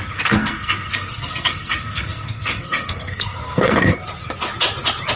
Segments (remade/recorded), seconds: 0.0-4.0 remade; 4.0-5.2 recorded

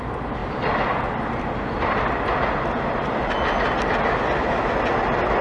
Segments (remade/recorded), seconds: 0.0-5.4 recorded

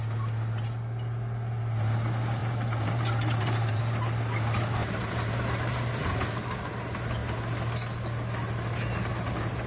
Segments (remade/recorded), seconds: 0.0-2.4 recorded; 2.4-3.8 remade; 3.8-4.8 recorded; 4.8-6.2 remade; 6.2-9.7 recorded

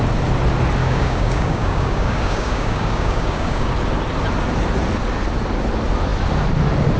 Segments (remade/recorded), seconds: 0.0-0.8 recorded; 0.8-3.7 remade; 3.7-7.0 recorded

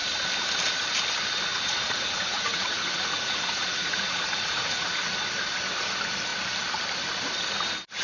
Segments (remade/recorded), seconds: 0.0-1.5 recorded; 1.5-5.1 remade; 5.1-8.0 recorded